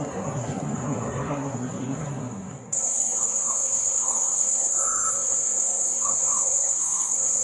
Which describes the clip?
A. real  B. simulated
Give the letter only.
B